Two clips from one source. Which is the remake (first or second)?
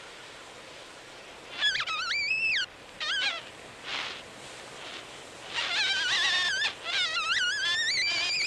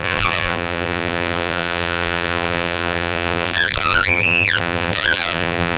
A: second